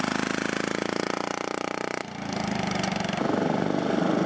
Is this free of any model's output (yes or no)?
yes